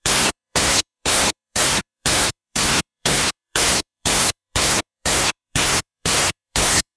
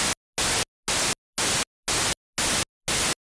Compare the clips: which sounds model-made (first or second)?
first